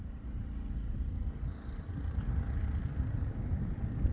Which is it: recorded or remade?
recorded